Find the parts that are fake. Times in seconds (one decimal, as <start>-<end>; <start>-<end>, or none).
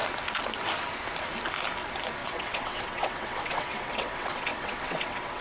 2.2-5.4